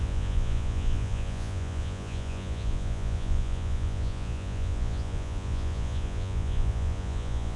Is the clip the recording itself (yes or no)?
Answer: no